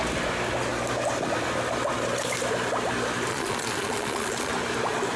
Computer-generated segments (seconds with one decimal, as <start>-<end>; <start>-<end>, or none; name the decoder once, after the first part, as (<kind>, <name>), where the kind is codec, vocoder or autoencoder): 3.3-4.5 (vocoder, Vocos)